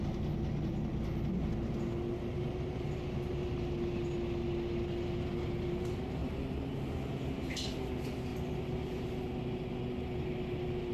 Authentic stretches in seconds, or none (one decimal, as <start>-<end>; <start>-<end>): 0.0-6.2; 7.9-10.9